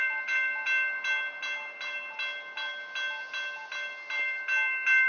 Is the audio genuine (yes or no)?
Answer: yes